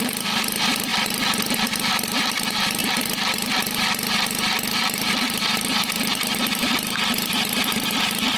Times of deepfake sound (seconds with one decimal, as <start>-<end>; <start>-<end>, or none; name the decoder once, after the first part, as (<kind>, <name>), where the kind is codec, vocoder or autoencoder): 0.0-0.9 (vocoder, BigVGAN v2); 1.9-2.8; 4.8-8.4